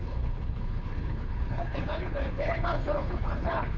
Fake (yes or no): yes